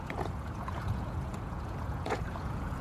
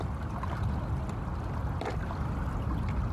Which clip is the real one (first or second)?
second